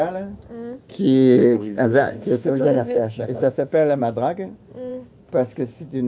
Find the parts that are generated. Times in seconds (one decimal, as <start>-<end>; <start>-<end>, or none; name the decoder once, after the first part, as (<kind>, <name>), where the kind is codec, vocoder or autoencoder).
1.4-4.0 (autoencoder, DAC-VAE)